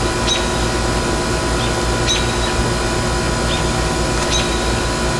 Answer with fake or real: real